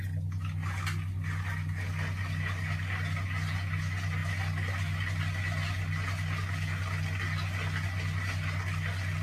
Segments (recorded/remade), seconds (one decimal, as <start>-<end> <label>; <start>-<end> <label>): 0.0-9.2 recorded